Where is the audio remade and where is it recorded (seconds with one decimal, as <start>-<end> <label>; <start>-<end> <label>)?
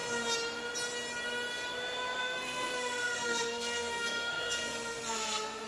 0.0-2.2 recorded; 2.2-5.7 remade